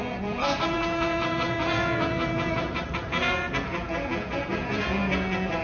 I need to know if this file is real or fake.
fake